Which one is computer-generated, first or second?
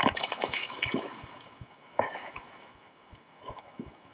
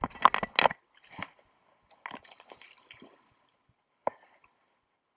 first